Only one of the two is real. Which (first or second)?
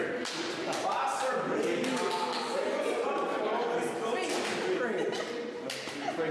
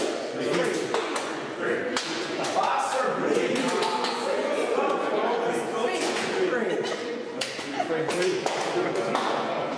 first